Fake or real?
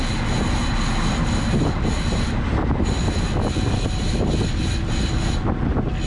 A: real